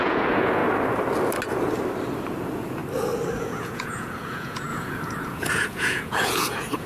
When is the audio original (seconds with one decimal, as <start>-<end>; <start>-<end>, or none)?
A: 0.6-2.4; 2.8-3.4